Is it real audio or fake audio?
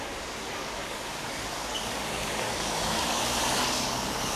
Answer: fake